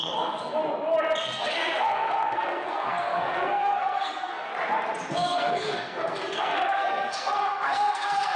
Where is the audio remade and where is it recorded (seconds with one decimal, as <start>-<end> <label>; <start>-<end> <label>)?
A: 0.0-0.6 remade; 0.6-1.2 recorded; 1.2-4.5 remade; 4.5-5.1 recorded; 5.1-8.4 remade